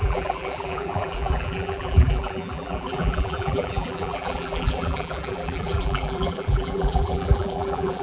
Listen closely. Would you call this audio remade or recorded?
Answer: remade